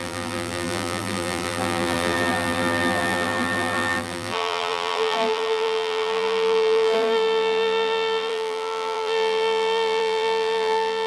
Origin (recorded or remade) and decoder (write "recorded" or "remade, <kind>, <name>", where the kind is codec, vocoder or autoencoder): remade, vocoder, BigVGAN v2